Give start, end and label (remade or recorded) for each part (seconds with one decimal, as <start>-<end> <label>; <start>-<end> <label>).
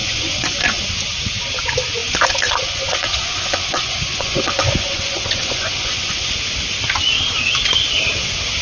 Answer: 0.0-0.8 remade; 0.8-2.0 recorded; 2.0-6.3 remade; 6.3-8.6 recorded